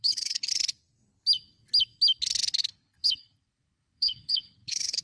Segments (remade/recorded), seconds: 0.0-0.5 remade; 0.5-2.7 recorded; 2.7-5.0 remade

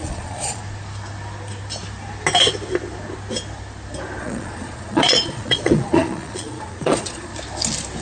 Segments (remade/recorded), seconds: 0.0-0.6 remade; 0.6-4.2 recorded; 4.2-7.3 remade; 7.3-8.0 recorded

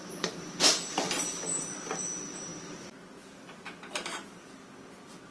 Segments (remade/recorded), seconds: 0.0-5.3 recorded

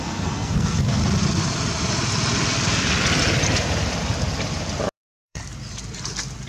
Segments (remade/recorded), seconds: 0.0-1.0 remade; 1.0-4.9 recorded; 4.9-5.4 remade; 5.4-6.5 recorded

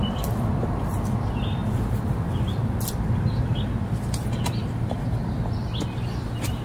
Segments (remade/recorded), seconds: 0.0-6.6 recorded

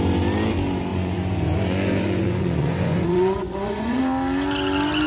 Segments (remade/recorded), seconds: 0.0-0.9 recorded; 0.9-4.0 remade; 4.0-5.1 recorded

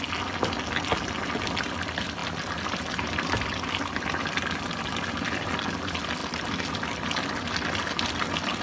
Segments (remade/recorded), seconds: 0.0-8.6 recorded

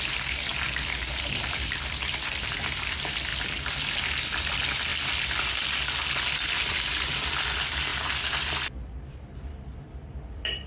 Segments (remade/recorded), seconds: 0.0-0.5 remade; 0.5-1.1 recorded; 1.1-3.3 remade; 3.3-4.4 recorded; 4.4-4.9 remade; 4.9-6.2 recorded; 6.2-10.7 remade